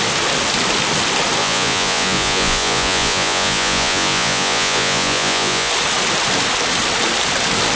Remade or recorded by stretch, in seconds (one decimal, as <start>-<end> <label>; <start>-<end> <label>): 0.0-1.4 recorded; 1.4-5.7 remade; 5.7-7.8 recorded